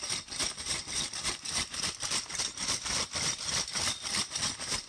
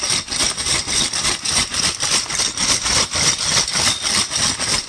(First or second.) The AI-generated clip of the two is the first